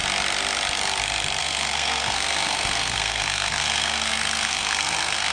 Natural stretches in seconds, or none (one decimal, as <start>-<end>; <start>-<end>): 0.0-1.4